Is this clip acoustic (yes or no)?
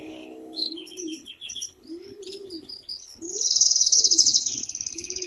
no